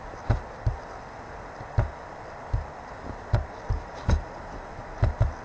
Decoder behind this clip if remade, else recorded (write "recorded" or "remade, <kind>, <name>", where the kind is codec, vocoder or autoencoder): recorded